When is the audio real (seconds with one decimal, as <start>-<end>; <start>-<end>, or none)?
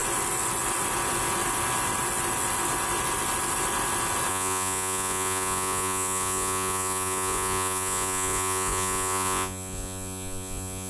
0.0-4.3